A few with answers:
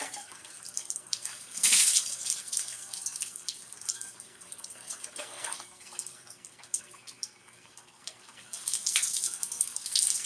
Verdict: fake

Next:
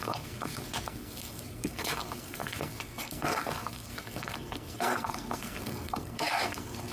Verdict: fake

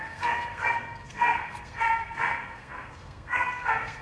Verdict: fake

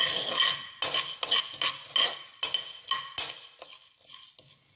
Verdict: real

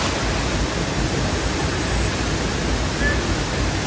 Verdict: real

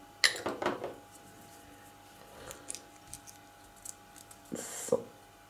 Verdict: real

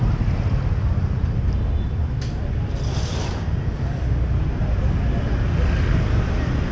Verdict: real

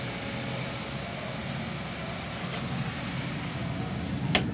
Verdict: real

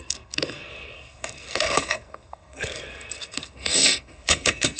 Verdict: fake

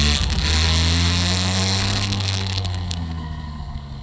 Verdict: fake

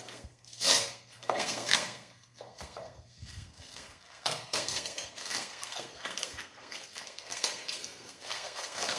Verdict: fake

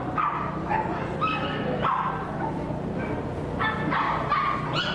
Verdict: real